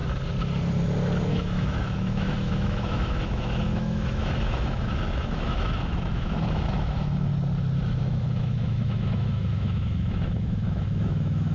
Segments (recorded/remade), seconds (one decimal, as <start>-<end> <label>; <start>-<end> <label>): 0.0-1.3 recorded; 1.3-7.3 remade; 7.3-8.0 recorded; 8.0-11.5 remade

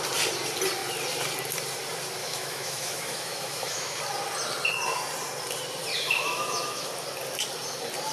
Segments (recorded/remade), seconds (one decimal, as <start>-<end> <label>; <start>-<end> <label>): 0.0-2.2 recorded; 2.2-4.0 remade; 4.0-5.9 recorded; 5.9-6.9 remade; 6.9-8.1 recorded

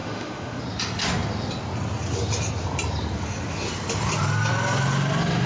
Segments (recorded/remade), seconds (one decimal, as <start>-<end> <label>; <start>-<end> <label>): 0.0-0.6 remade; 0.6-5.5 recorded

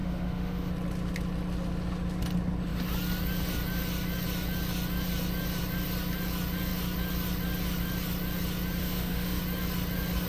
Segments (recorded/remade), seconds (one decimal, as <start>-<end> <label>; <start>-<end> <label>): 0.0-0.7 remade; 0.7-8.8 recorded; 8.8-9.4 remade; 9.4-10.3 recorded

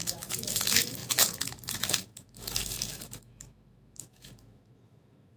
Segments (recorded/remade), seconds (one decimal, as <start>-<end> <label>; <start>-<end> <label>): 0.0-5.4 remade

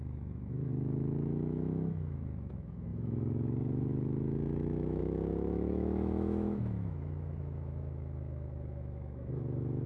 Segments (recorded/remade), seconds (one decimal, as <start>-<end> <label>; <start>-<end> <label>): 0.0-9.9 remade